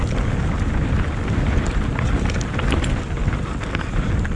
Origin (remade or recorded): recorded